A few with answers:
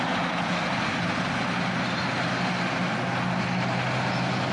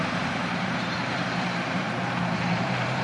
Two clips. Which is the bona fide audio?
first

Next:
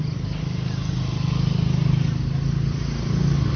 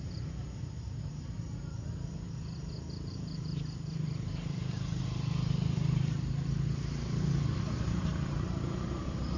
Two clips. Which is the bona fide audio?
first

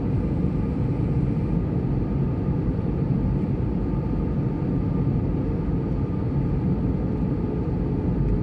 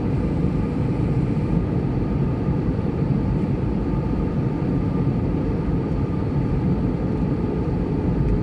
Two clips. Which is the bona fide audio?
first